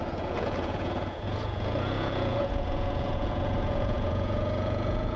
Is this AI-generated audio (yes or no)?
yes